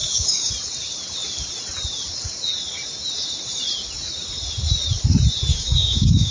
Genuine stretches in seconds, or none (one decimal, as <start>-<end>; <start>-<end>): 0.5-5.5